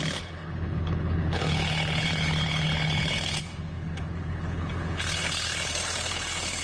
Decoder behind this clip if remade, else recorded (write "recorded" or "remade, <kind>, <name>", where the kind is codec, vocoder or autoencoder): remade, codec, HILCodec